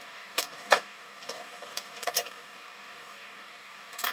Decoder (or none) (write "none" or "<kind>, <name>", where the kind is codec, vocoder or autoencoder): codec, DAC